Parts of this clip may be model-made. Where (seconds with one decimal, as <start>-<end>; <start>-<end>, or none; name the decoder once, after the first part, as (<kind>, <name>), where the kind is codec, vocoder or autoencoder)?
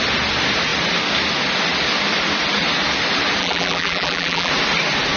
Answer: 3.4-4.5 (vocoder, BigVGAN v2)